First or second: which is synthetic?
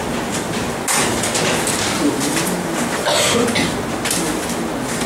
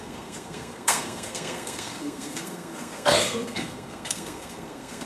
second